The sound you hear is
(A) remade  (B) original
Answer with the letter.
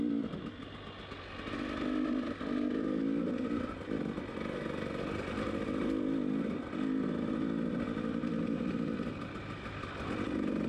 B